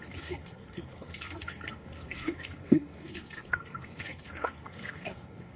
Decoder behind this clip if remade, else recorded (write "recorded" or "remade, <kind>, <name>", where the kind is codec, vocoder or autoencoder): remade, codec, SNAC